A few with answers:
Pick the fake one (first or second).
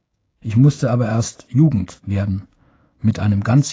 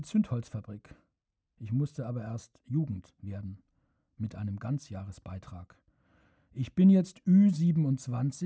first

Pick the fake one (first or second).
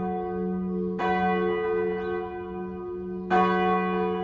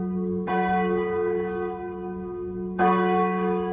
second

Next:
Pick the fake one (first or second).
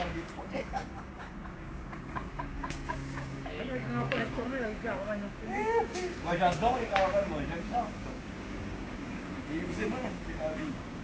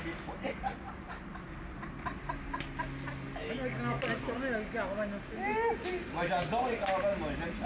first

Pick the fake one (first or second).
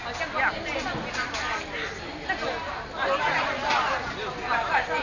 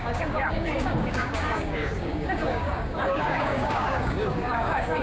second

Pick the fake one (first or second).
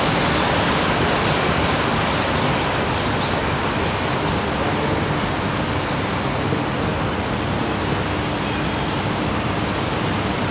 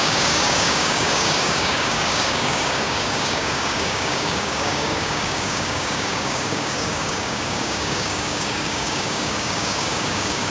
second